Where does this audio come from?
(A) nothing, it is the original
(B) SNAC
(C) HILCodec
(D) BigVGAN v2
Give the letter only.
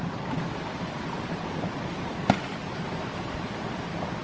A